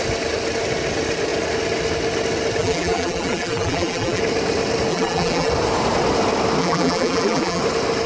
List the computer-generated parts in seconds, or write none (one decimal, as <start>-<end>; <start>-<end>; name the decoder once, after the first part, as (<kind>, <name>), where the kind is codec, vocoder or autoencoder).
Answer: 2.6-4.2 (vocoder, BigVGAN v2); 4.9-5.5; 6.6-7.6